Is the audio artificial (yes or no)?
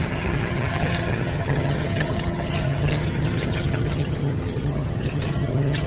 yes